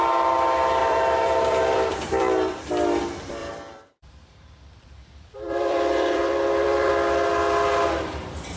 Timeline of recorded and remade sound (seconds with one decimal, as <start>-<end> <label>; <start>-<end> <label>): 0.0-0.8 recorded; 0.8-3.0 remade; 3.0-3.4 recorded; 3.4-6.9 remade; 6.9-8.6 recorded